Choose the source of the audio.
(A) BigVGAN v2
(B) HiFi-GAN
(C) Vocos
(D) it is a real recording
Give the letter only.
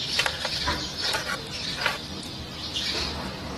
A